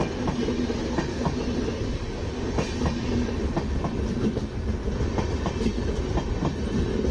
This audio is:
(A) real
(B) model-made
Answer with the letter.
A